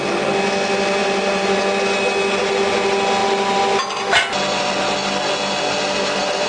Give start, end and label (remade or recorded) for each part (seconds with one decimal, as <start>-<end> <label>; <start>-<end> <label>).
0.0-1.0 recorded; 1.0-1.6 remade; 1.6-6.5 recorded